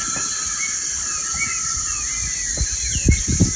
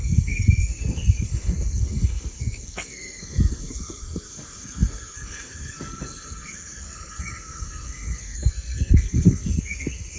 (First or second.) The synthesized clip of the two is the second